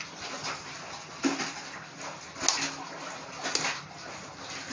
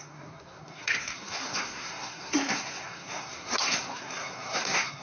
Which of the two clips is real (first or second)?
first